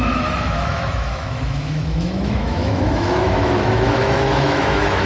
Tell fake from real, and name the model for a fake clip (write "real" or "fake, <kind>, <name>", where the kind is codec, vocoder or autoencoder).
fake, autoencoder, DAC-VAE